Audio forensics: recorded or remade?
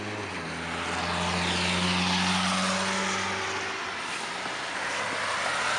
recorded